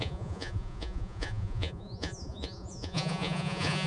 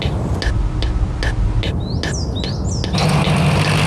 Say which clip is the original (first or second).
second